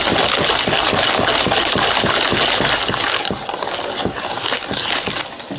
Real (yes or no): yes